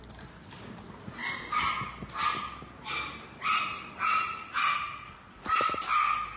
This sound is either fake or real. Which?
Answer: real